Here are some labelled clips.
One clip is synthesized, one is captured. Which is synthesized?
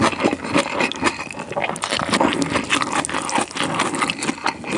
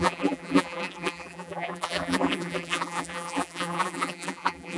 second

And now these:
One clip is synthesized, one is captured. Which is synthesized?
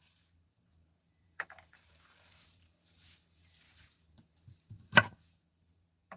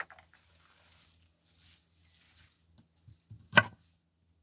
first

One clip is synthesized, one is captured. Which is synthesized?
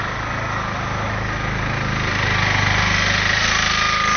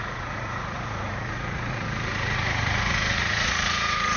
second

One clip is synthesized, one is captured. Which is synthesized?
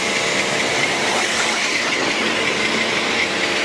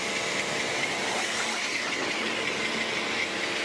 first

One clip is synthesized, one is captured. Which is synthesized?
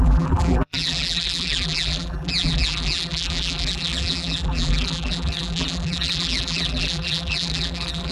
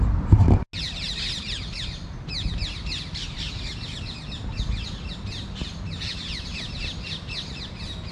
first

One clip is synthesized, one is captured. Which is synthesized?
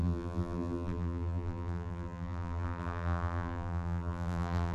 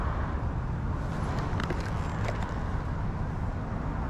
first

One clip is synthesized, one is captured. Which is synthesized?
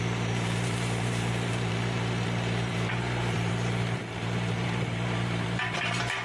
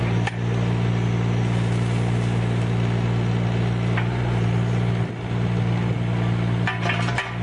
first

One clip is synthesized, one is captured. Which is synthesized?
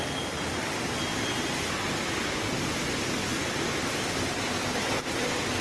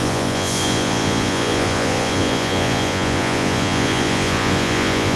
second